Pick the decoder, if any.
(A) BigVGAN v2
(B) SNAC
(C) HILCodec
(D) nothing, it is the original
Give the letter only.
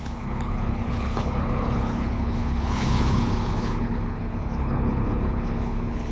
C